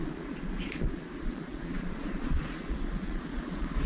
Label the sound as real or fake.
fake